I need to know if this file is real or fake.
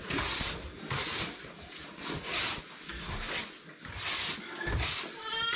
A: real